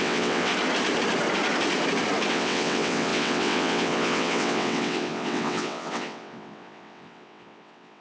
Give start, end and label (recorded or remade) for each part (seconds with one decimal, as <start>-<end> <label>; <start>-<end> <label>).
0.0-0.5 remade; 0.5-2.3 recorded; 2.3-8.0 remade